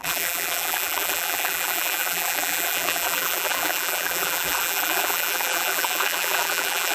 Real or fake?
fake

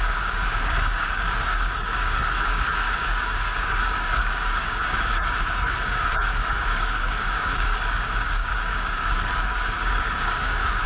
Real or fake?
fake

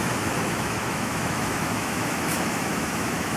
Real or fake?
fake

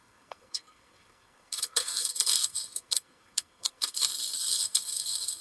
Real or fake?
fake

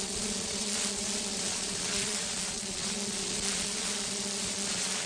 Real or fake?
fake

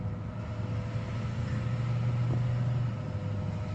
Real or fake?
real